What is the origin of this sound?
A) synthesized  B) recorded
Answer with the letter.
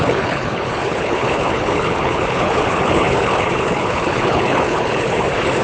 A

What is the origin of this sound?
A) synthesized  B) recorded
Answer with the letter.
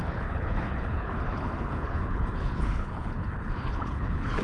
A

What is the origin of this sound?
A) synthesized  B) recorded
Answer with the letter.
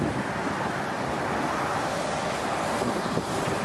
B